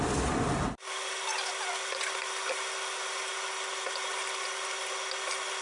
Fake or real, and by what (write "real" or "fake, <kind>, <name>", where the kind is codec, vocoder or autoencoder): real